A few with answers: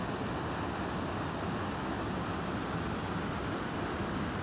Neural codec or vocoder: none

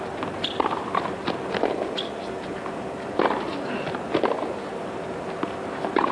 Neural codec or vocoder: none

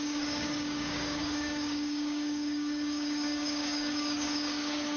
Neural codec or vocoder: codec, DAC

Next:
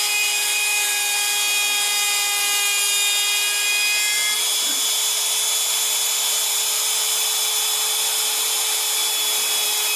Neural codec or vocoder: none